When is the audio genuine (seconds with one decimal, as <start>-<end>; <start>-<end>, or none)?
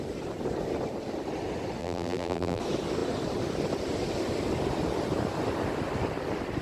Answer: 0.0-1.8; 2.6-6.6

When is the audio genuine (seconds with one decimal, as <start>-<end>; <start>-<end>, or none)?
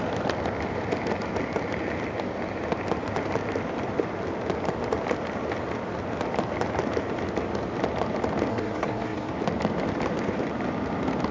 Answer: 0.0-8.5; 9.3-11.3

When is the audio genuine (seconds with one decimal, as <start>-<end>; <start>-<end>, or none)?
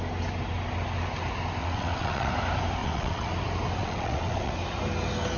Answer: 0.0-1.6; 2.3-2.8; 3.3-3.8; 4.5-5.4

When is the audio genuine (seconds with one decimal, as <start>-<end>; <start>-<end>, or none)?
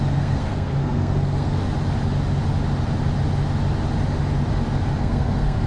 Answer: 1.6-5.0